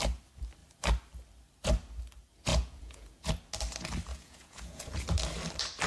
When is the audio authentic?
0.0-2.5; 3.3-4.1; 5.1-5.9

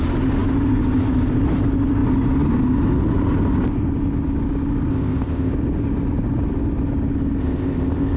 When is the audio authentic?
0.0-4.9; 5.5-7.4